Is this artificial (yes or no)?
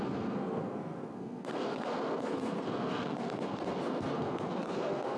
yes